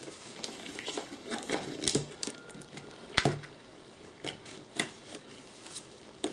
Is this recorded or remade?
remade